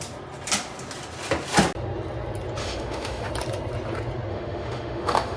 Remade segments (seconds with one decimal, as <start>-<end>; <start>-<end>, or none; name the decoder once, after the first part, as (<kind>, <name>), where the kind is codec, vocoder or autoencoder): 2.6-3.3 (autoencoder, DAC-VAE); 4.3-5.4